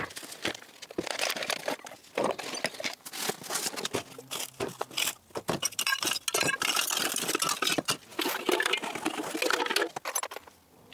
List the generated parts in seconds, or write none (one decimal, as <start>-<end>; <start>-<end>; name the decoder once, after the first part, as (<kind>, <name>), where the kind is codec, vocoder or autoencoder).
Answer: none